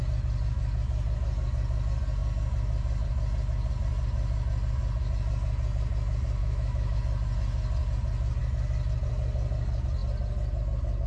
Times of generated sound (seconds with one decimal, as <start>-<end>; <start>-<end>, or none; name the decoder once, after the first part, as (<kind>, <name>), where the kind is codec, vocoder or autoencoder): 6.4-7.0 (autoencoder, DAC-VAE)

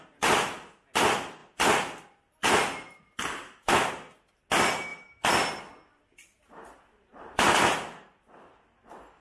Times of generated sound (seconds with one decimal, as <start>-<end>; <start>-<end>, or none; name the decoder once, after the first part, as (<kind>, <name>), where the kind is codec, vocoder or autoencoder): none

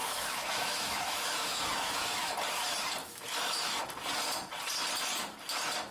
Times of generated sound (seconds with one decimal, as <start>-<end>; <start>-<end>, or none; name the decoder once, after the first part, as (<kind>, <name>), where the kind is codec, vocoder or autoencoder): 0.0-2.3 (autoencoder, DAC-VAE); 3.0-3.8

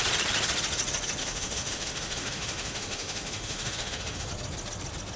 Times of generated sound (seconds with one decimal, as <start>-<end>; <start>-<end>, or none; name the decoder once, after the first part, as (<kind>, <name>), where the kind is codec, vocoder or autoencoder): 1.2-4.3 (autoencoder, DAC-VAE)

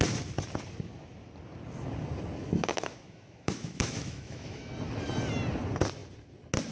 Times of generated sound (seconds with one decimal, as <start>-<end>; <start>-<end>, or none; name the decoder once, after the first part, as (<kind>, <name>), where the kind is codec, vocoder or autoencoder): 2.4-4.7 (autoencoder, DAC-VAE)

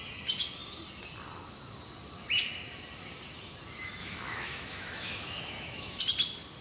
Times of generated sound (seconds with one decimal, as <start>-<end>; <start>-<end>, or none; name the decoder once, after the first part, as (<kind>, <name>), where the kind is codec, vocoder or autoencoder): 4.0-6.0 (autoencoder, DAC-VAE)

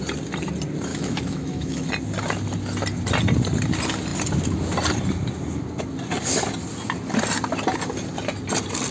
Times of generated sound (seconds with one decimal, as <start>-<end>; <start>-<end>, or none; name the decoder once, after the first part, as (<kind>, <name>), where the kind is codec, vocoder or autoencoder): 0.9-1.9 (autoencoder, DAC-VAE)